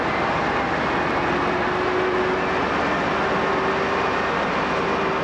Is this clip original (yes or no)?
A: yes